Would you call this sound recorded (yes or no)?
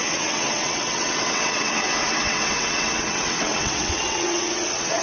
no